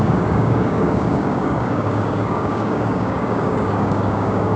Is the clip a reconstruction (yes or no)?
yes